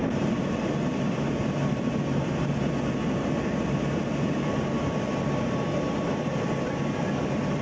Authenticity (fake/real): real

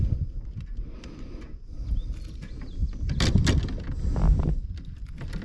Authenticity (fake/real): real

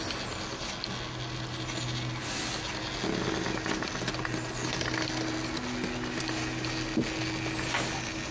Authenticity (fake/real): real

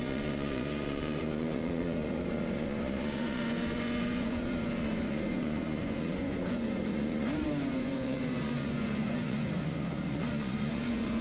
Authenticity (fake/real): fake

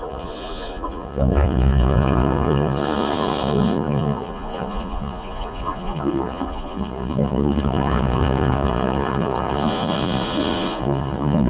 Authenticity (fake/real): fake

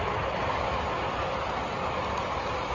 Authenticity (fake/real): real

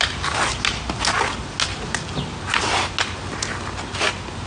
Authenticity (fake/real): real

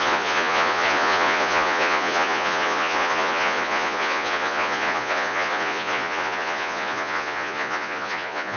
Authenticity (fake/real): fake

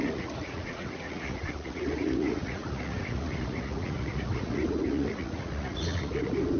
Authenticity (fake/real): fake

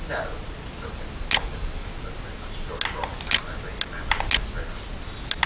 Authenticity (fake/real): real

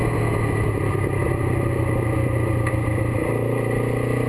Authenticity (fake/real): real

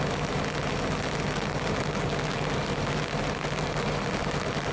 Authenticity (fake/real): real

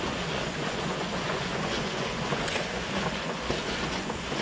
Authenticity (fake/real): fake